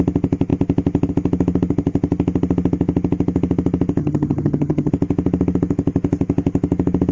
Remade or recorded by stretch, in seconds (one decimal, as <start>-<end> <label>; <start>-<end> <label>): 0.0-4.0 recorded; 4.0-4.9 remade; 4.9-7.1 recorded